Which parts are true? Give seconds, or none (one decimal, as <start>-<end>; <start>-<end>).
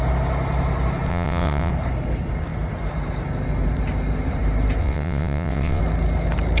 0.0-1.1; 1.7-4.8; 5.8-6.6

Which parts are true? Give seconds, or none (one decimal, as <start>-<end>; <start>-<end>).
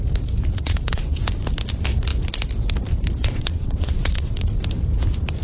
0.0-0.5; 1.2-3.2; 4.6-5.4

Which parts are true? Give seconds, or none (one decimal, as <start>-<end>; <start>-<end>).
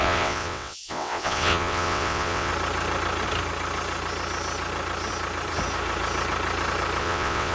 2.5-7.0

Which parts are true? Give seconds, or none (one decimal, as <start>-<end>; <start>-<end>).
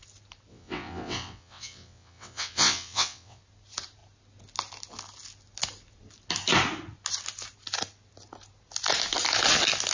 0.0-0.5; 3.4-9.9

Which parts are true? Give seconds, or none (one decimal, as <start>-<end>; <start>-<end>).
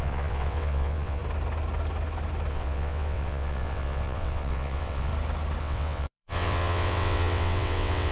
1.2-2.5; 5.1-5.6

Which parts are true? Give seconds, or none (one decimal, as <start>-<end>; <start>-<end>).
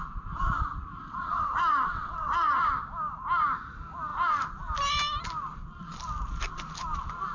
0.0-1.0; 2.7-7.3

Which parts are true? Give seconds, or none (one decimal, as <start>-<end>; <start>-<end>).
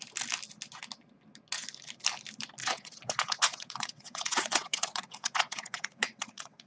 0.0-2.6